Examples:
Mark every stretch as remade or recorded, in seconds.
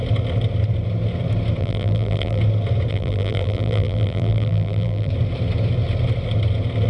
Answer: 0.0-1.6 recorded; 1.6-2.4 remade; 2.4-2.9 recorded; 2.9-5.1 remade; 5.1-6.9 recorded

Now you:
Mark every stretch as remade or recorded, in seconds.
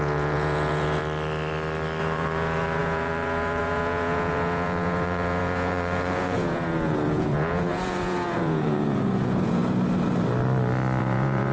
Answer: 0.0-1.0 remade; 1.0-2.0 recorded; 2.0-9.6 remade; 9.6-11.0 recorded; 11.0-11.5 remade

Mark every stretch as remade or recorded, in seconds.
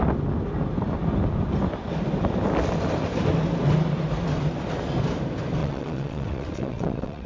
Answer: 0.0-5.6 recorded; 5.6-7.3 remade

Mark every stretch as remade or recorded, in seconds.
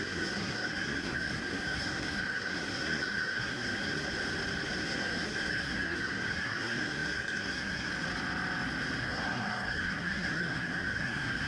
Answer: 0.0-4.1 remade; 4.1-4.8 recorded; 4.8-7.9 remade; 7.9-9.0 recorded; 9.0-11.5 remade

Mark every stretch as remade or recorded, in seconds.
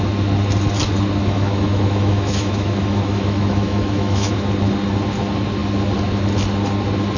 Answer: 0.0-1.2 recorded; 1.2-4.3 remade; 4.3-7.2 recorded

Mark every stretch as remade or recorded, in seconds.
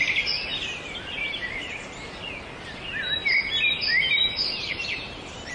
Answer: 0.0-0.5 recorded; 0.5-1.7 remade; 1.7-3.9 recorded; 3.9-5.5 remade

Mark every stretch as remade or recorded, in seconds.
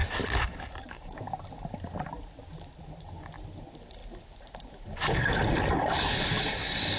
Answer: 0.0-1.3 remade; 1.3-2.5 recorded; 2.5-3.1 remade; 3.1-4.0 recorded; 4.0-6.0 remade; 6.0-7.0 recorded